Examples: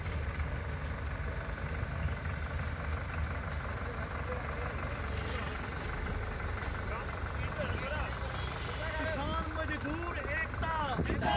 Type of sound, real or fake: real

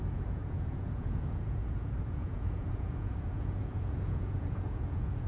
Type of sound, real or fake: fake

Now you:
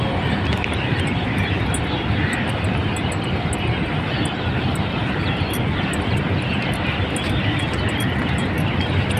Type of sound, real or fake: real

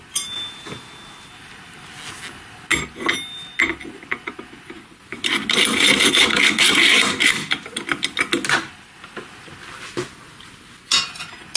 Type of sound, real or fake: real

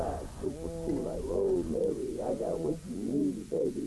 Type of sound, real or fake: fake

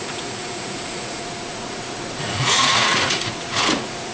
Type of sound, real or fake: fake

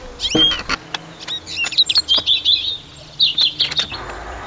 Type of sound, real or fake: real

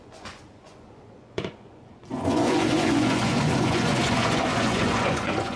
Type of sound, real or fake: fake